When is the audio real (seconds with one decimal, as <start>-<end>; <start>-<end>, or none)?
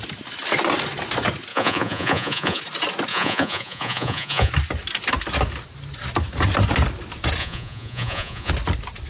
0.0-1.5; 2.6-3.1; 4.5-7.4; 8.5-9.1